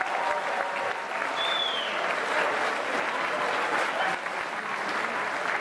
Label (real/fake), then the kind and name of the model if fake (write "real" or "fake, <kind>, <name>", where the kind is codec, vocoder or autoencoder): real